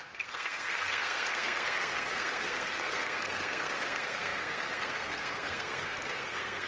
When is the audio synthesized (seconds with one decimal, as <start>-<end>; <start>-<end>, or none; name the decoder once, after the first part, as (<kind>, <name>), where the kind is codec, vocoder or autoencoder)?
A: 0.0-6.7 (codec, SNAC)